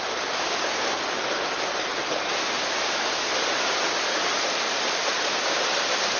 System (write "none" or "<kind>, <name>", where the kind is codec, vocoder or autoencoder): none